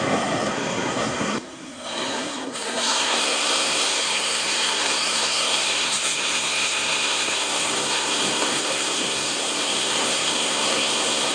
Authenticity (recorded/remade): remade